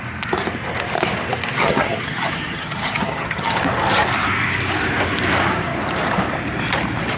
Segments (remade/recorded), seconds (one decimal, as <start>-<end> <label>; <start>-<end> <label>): 0.0-1.5 recorded; 1.5-3.6 remade; 3.6-7.2 recorded